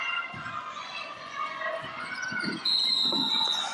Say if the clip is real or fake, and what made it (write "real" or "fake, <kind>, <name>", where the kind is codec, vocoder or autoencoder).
fake, vocoder, Vocos